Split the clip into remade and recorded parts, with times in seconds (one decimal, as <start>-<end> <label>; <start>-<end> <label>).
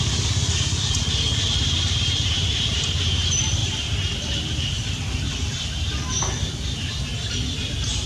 0.0-8.1 recorded